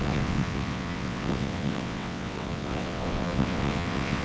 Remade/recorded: remade